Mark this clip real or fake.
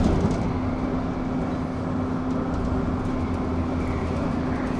real